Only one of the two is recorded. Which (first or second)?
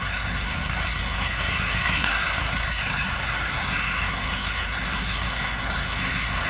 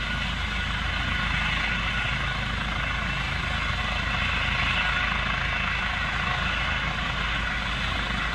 second